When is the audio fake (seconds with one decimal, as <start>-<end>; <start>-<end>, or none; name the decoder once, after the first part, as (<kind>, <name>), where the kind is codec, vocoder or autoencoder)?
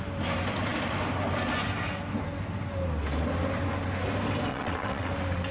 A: 4.5-5.1 (vocoder, WaveNeXt)